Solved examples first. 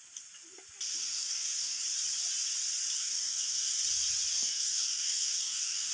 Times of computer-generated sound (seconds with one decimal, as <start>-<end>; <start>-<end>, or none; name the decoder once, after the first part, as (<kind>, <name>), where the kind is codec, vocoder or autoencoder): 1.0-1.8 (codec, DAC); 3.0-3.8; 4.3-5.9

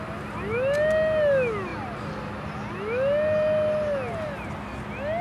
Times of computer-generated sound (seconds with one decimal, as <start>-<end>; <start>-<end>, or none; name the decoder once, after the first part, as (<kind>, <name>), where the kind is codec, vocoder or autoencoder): none

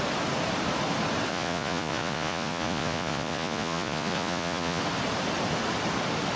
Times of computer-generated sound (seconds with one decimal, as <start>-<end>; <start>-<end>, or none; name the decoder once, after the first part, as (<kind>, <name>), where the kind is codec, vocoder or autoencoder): 1.3-4.8 (vocoder, Vocos)